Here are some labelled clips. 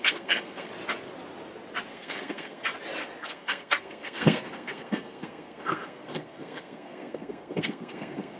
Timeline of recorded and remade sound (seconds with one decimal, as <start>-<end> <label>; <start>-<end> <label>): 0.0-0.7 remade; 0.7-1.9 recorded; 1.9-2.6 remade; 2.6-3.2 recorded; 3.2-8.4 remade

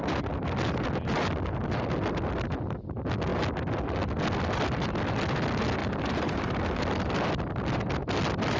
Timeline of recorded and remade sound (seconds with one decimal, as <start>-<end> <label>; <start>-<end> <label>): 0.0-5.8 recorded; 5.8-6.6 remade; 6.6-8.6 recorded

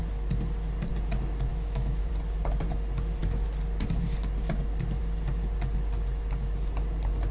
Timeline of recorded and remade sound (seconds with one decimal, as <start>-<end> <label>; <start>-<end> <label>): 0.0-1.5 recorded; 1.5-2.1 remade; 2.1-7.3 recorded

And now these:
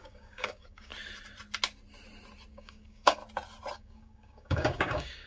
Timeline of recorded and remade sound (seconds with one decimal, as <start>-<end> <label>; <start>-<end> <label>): 0.0-0.9 remade; 0.9-2.5 recorded; 2.5-3.2 remade; 3.2-3.7 recorded; 3.7-5.3 remade

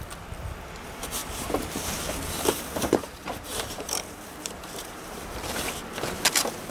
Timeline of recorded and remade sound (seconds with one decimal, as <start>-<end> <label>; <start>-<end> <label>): 0.0-1.2 recorded; 1.2-5.2 remade; 5.2-6.7 recorded